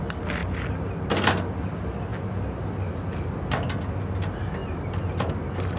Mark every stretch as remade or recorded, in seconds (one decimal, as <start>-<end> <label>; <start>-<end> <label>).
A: 0.0-5.8 recorded